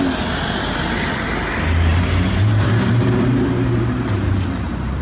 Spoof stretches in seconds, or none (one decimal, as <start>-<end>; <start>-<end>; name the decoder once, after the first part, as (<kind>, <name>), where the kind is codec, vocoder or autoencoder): 1.9-5.0 (vocoder, BigVGAN v2)